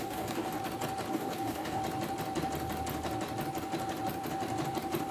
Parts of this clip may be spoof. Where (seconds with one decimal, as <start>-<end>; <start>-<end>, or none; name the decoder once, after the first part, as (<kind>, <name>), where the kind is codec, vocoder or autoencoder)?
0.0-0.6 (codec, DAC); 1.1-1.8